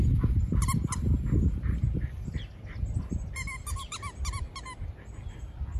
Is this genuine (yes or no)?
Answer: yes